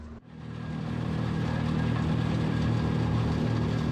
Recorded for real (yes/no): yes